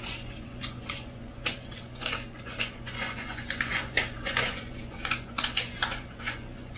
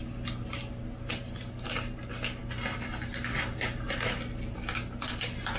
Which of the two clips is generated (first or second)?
first